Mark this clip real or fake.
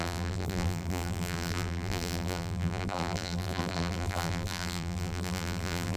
fake